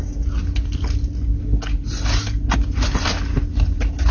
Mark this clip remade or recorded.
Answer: recorded